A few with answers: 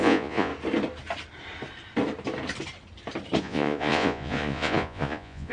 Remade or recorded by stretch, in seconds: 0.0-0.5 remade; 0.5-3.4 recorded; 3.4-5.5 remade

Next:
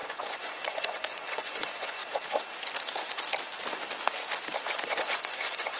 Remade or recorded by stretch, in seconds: 0.0-2.0 remade; 2.0-4.8 recorded; 4.8-5.8 remade